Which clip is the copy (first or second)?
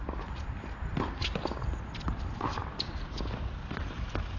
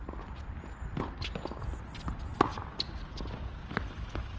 first